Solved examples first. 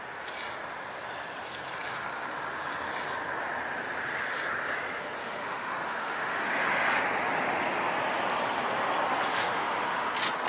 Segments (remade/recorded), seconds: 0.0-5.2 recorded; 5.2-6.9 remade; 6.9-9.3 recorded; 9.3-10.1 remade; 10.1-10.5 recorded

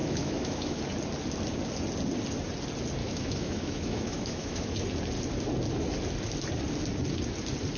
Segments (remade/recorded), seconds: 0.0-0.8 remade; 0.8-3.0 recorded; 3.0-4.8 remade; 4.8-7.8 recorded